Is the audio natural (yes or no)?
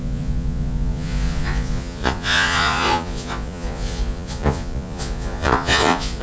no